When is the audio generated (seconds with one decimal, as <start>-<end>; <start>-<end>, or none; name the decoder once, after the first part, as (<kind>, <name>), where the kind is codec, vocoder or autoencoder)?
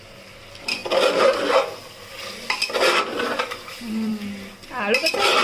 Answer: 0.0-0.8 (vocoder, BigVGAN v2); 3.0-4.1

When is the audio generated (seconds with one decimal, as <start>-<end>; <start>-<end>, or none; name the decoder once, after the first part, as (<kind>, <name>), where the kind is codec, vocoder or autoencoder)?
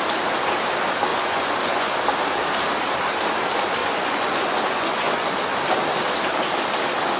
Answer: 1.1-1.9 (vocoder, Vocos); 3.8-5.3